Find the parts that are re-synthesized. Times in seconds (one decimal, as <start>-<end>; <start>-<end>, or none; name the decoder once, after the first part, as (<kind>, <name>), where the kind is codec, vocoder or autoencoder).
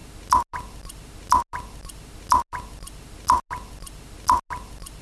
none